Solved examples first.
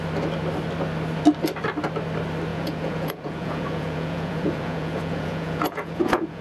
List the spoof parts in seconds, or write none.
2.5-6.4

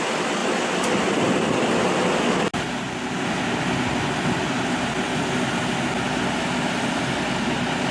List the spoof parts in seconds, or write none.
none

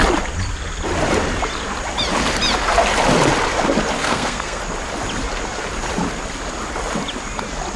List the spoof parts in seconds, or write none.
4.0-4.6

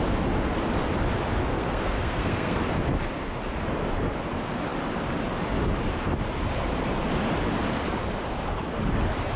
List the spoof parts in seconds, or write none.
1.5-2.6

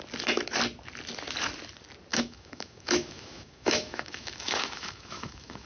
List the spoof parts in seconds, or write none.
2.1-5.7

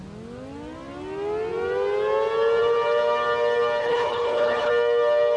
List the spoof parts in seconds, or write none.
3.8-4.7

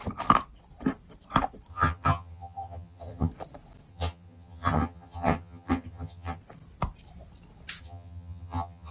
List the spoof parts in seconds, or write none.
1.7-3.3; 3.9-6.4; 7.8-8.9